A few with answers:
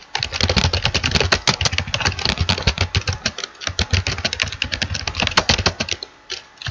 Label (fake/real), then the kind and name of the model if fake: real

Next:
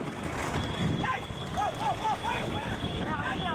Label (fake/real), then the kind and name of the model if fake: fake, codec, DAC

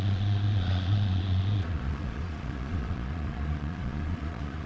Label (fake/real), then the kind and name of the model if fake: fake, vocoder, Vocos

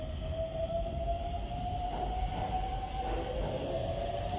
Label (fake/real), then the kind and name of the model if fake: real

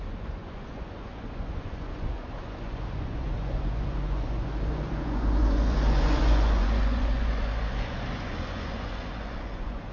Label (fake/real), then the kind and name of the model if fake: fake, vocoder, Vocos